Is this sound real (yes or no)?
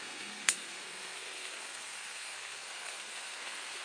no